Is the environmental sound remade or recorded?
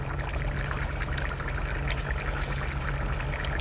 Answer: recorded